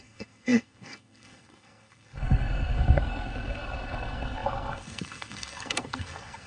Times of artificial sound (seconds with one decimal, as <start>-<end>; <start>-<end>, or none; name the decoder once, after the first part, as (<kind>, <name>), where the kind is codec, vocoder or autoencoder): 0.0-6.5 (codec, SNAC)